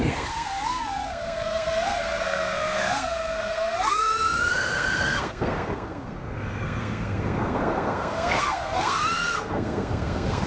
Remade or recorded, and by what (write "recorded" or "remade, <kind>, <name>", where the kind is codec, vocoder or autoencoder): remade, codec, SNAC